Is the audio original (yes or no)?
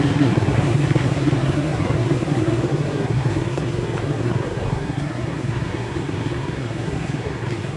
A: no